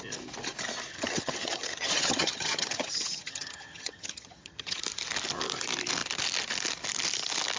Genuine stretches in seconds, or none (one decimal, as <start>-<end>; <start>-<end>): 0.0-0.9; 4.8-7.6